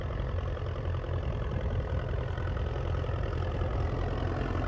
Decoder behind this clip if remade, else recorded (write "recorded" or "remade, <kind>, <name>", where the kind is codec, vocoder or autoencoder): recorded